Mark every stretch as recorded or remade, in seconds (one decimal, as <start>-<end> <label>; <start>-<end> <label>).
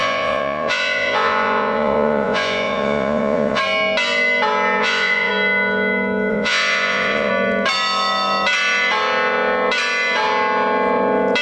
0.0-3.6 remade; 3.6-4.8 recorded; 4.8-5.3 remade; 5.3-6.3 recorded; 6.3-7.3 remade; 7.3-11.4 recorded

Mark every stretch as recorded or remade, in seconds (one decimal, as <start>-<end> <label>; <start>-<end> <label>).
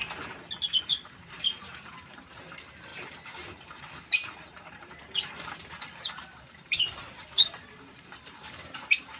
0.0-0.8 recorded; 0.8-9.2 remade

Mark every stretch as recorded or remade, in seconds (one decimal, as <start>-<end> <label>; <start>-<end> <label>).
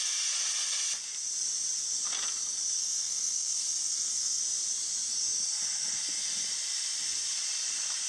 0.0-2.8 recorded; 2.8-4.4 remade; 4.4-8.1 recorded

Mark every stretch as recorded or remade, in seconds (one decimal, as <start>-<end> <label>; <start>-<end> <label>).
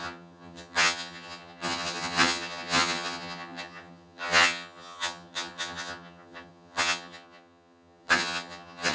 0.0-8.9 remade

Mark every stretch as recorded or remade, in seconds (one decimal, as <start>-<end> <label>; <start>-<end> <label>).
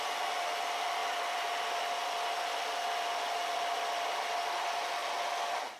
0.0-5.8 recorded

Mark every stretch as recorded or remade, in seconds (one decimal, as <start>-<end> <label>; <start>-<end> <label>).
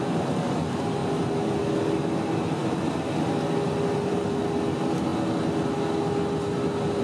0.0-7.0 recorded